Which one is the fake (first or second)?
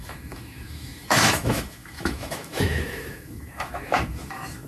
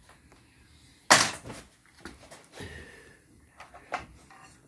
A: first